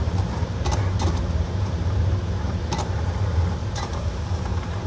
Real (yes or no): no